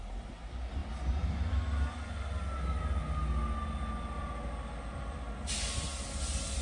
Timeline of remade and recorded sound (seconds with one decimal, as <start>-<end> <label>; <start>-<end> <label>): 0.0-6.6 recorded